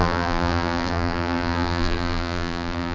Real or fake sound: fake